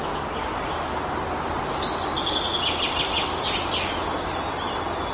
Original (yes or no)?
yes